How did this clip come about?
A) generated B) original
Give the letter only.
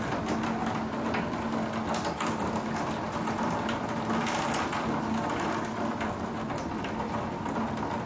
B